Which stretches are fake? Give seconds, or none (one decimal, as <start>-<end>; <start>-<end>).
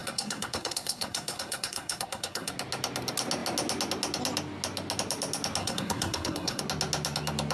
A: 0.0-2.5; 5.6-6.6